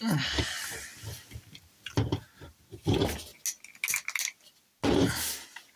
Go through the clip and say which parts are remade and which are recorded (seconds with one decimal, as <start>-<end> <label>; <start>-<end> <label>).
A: 0.0-5.8 recorded